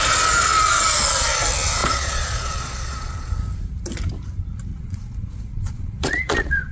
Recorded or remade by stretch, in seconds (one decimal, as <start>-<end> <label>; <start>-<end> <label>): 0.0-1.8 recorded; 1.8-3.3 remade; 3.3-4.7 recorded; 4.7-6.7 remade